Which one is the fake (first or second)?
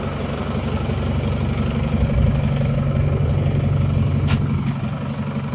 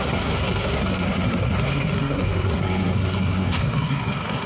second